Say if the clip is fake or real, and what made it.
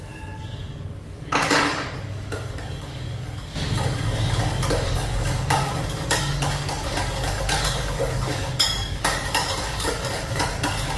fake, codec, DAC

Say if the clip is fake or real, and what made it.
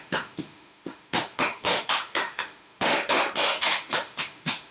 fake, autoencoder, DAC-VAE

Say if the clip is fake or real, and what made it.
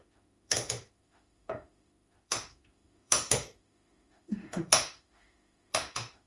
fake, autoencoder, DAC-VAE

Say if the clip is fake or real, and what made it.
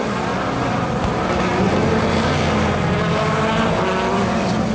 real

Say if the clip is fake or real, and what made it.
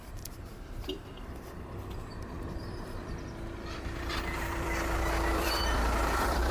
fake, vocoder, BigVGAN v2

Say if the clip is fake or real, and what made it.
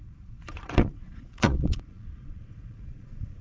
fake, vocoder, Vocos